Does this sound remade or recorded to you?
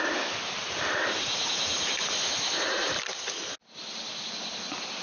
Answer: recorded